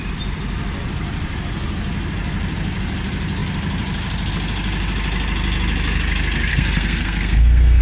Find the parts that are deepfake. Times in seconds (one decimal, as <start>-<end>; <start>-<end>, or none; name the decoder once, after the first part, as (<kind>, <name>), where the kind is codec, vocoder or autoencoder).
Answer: 6.5-7.8 (codec, SNAC)